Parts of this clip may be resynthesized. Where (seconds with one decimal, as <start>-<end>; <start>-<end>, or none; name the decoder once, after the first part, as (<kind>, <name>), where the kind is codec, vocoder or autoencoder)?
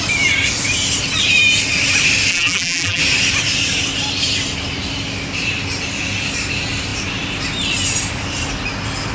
2.3-3.0 (vocoder, BigVGAN v2)